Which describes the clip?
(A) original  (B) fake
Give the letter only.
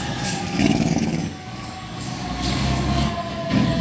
B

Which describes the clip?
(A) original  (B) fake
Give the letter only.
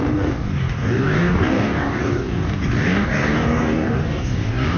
B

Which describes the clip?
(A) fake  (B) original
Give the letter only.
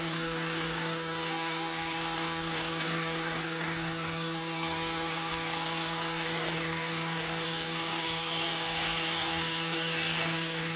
A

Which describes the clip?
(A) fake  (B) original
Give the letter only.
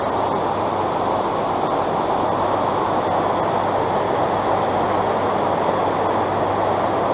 B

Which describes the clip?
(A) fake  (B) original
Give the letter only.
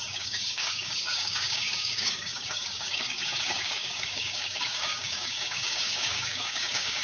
A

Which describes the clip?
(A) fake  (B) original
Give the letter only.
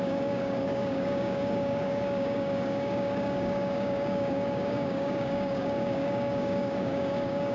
A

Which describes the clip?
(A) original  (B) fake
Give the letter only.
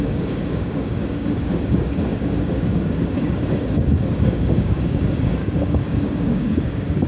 B